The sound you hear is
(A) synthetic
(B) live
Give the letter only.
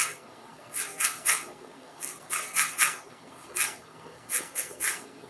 A